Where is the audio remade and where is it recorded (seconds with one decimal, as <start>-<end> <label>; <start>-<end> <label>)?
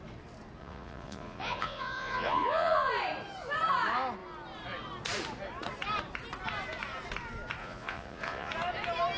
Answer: 0.0-0.6 recorded; 0.6-2.9 remade; 2.9-7.6 recorded; 7.6-8.5 remade; 8.5-9.2 recorded